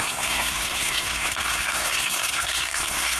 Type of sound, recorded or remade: remade